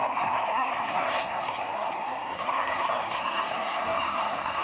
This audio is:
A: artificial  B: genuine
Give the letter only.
A